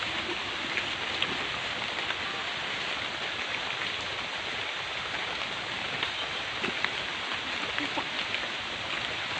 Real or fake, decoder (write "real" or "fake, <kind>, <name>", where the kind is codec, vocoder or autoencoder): real